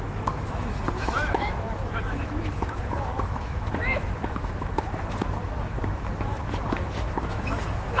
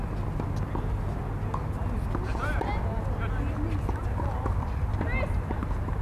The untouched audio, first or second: second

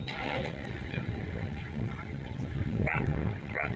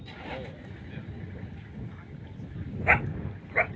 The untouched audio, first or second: second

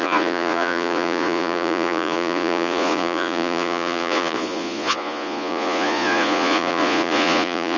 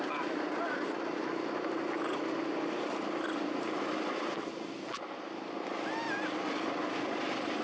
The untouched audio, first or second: second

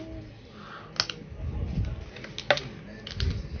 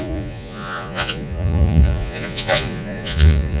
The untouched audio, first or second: first